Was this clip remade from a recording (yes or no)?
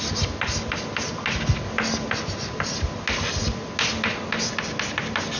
no